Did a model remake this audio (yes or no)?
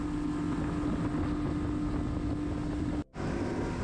no